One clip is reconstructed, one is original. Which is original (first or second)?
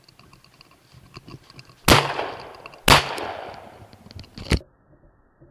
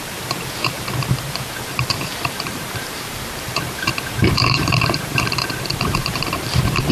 first